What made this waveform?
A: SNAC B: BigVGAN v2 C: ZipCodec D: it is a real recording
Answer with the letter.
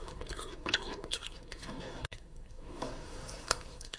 A